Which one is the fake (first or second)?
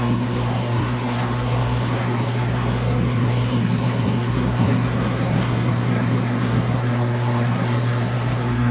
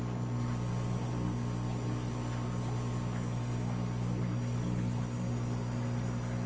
first